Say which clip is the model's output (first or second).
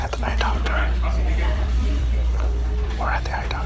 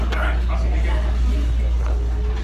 first